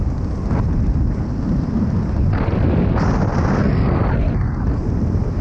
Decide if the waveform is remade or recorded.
recorded